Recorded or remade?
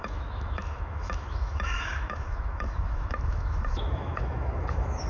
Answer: remade